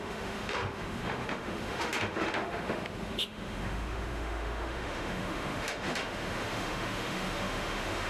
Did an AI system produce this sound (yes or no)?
yes